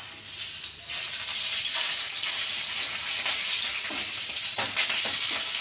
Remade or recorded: recorded